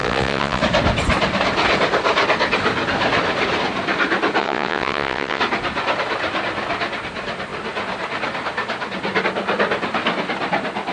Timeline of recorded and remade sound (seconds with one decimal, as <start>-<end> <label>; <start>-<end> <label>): 0.0-0.6 remade; 0.6-4.4 recorded; 4.4-5.4 remade; 5.4-10.9 recorded